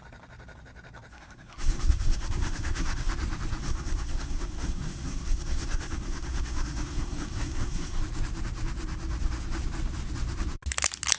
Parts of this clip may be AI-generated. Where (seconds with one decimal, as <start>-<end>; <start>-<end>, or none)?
1.1-3.1; 3.6-8.0